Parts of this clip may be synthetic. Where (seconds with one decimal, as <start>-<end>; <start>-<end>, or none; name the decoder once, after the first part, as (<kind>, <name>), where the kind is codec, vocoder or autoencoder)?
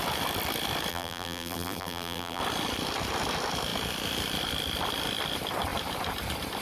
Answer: 0.9-2.4 (vocoder, BigVGAN v2)